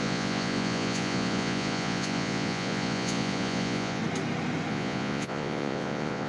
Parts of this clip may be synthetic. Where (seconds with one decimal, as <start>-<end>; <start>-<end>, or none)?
0.0-4.0; 4.7-6.3

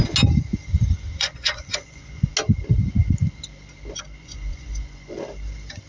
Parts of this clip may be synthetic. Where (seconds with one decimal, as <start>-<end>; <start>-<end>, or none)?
1.1-2.3; 4.2-5.2

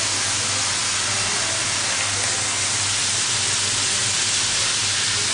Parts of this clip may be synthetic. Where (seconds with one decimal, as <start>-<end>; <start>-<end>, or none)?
none